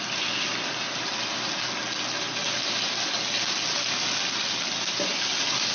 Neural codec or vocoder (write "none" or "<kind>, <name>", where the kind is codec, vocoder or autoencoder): none